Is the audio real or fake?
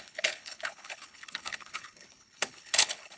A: fake